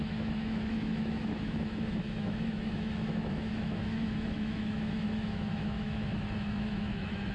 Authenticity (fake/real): fake